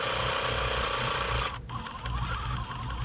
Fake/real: real